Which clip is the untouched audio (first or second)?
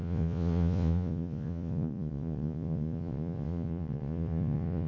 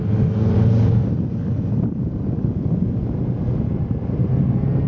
second